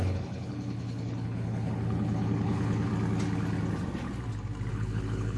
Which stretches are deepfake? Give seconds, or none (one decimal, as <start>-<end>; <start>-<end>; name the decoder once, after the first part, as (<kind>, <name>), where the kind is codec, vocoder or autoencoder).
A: 0.0-2.9 (codec, HILCodec); 4.7-5.4